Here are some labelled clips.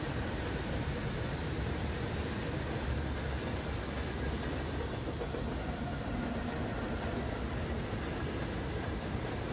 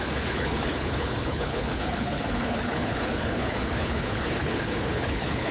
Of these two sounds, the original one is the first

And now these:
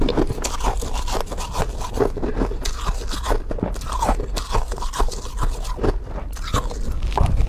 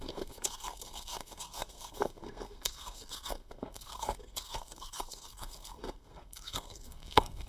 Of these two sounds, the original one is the first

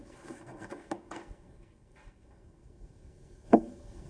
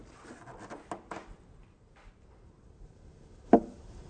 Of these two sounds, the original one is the second